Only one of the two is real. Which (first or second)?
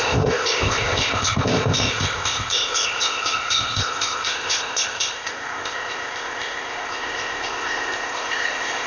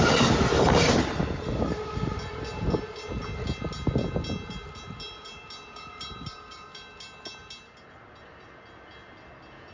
second